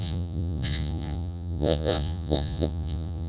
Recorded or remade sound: remade